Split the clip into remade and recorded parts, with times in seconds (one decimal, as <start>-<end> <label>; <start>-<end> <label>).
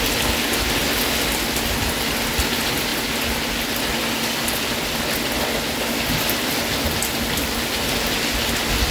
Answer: 0.0-8.9 recorded